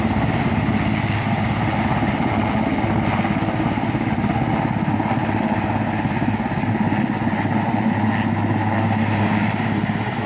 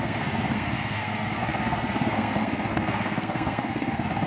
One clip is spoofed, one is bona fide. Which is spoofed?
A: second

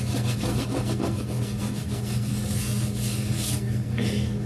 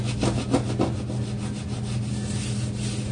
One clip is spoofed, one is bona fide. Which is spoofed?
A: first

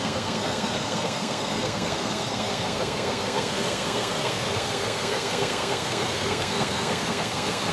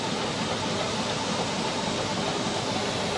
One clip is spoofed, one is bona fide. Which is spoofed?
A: first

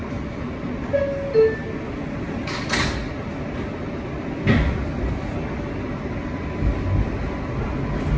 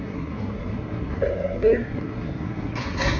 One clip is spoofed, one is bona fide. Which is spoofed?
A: second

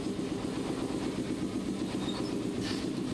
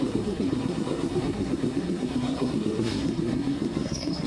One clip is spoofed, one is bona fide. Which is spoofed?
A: second